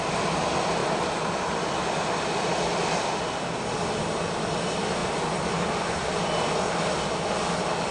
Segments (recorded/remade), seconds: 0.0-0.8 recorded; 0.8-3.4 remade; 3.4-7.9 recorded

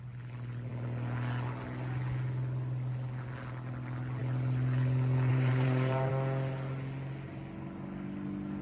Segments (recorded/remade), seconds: 0.0-5.3 recorded; 5.3-6.1 remade; 6.1-8.6 recorded

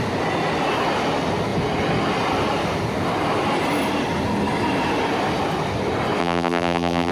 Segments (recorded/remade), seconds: 0.0-6.2 recorded; 6.2-7.1 remade

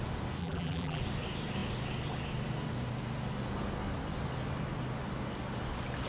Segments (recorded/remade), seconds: 0.0-0.4 recorded; 0.4-1.0 remade; 1.0-6.1 recorded

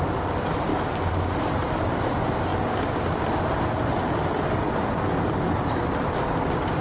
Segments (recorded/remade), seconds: 0.0-2.5 remade; 2.5-5.2 recorded; 5.2-6.8 remade

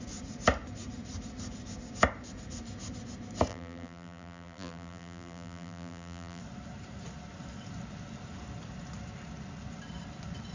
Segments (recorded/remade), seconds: 0.0-3.5 recorded; 3.5-6.4 remade; 6.4-10.5 recorded